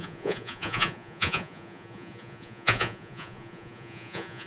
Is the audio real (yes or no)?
no